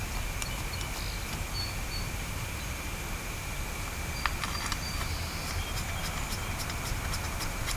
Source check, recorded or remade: recorded